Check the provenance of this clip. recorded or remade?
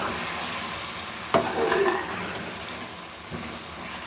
recorded